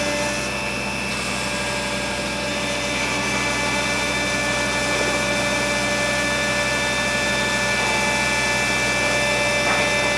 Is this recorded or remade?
recorded